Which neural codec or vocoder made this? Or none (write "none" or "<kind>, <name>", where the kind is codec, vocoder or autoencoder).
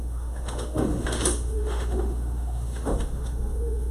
autoencoder, DAC-VAE